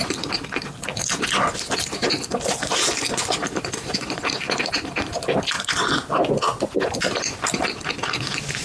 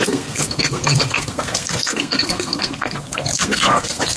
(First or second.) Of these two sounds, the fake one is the second